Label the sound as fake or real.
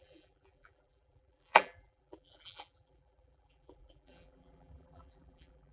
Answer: fake